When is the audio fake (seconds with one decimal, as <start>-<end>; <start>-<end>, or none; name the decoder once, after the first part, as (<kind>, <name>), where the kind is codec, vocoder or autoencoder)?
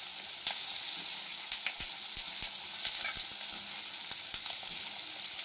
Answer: 1.3-1.9 (vocoder, Vocos)